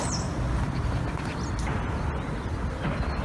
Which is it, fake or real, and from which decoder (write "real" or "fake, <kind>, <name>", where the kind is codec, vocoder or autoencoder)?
real